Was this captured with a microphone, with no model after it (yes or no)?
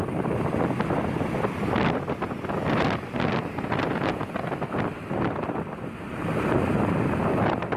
yes